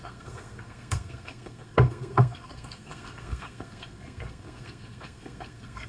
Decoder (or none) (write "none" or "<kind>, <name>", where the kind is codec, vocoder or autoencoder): codec, SNAC